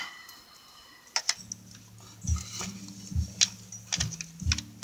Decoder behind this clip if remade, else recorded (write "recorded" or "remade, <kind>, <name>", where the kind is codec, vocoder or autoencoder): recorded